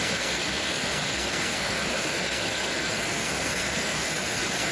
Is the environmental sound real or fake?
fake